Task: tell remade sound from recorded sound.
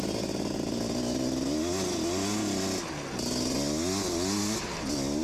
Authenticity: recorded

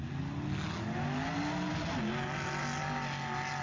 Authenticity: recorded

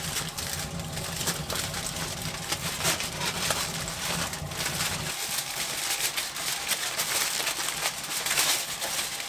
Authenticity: recorded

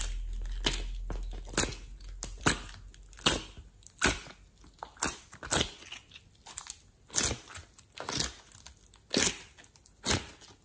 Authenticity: recorded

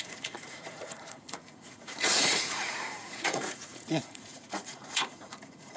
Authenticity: remade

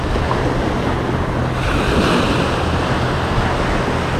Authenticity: recorded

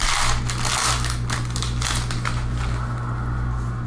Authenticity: recorded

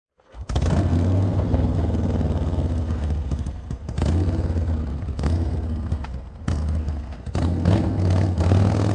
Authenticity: remade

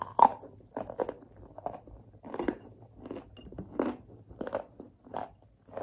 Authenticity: recorded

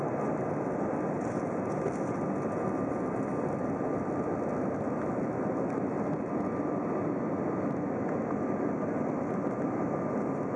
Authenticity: recorded